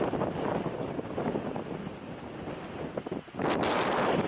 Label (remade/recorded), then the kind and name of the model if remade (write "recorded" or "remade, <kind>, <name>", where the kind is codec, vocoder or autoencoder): recorded